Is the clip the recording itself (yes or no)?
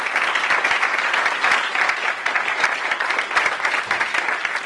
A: yes